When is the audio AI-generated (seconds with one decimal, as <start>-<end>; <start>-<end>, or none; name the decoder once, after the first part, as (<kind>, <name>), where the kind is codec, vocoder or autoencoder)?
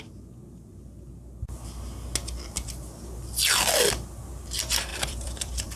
4.9-5.8 (vocoder, BigVGAN v2)